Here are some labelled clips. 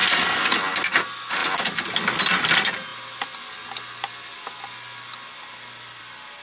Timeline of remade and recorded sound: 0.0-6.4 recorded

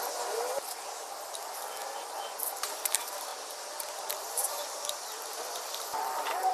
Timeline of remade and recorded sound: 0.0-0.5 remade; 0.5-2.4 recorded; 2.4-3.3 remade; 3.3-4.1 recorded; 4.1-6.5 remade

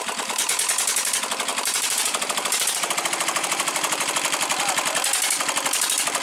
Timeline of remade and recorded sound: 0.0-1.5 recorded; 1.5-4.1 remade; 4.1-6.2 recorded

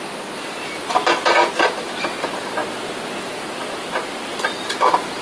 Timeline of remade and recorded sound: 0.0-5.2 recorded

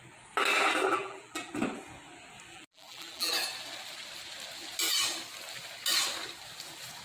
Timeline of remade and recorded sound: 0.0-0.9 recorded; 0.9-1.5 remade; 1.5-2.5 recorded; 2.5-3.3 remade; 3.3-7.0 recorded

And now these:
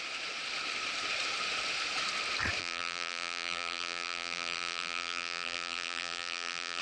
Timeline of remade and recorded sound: 0.0-2.6 recorded; 2.6-6.8 remade

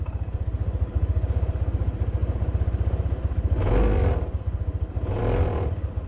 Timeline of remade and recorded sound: 0.0-6.1 recorded